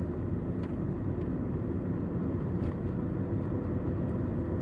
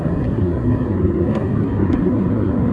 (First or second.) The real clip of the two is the first